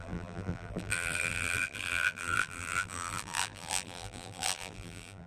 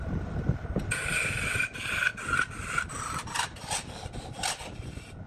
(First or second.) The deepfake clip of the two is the first